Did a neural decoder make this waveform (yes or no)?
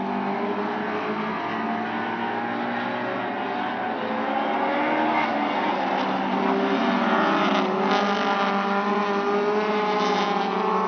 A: no